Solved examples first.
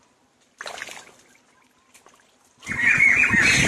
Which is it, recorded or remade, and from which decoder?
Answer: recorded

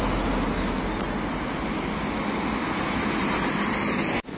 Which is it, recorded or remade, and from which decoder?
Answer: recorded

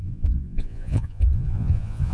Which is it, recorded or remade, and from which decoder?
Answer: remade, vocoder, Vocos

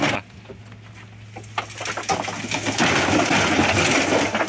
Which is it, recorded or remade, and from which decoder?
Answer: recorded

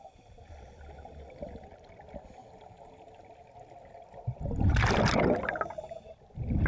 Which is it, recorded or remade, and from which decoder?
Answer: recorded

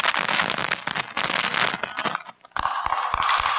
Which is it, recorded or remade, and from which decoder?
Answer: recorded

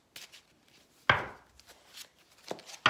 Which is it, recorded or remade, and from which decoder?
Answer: recorded